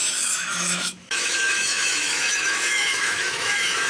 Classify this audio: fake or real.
fake